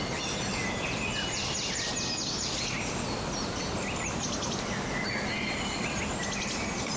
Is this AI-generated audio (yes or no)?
no